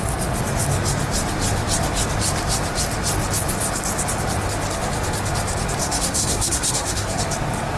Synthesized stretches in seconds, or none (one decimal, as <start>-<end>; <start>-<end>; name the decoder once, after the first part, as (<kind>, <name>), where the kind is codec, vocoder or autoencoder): 5.8-7.2 (codec, SNAC)